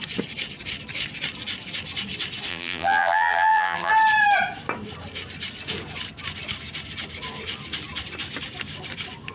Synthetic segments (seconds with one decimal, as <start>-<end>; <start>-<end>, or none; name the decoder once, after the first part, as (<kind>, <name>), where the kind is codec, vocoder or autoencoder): 2.5-3.9 (vocoder, BigVGAN v2)